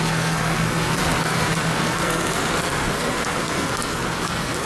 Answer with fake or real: fake